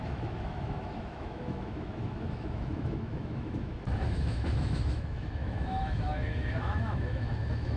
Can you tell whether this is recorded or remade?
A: remade